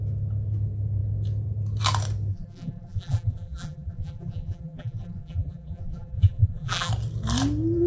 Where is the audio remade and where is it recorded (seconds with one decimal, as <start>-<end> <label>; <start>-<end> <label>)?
0.0-2.3 recorded; 2.3-6.9 remade; 6.9-7.9 recorded